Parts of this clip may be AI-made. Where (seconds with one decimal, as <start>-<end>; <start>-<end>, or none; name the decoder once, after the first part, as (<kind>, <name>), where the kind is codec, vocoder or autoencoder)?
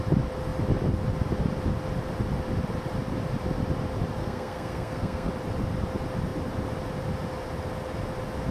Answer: 4.2-5.3 (codec, SNAC)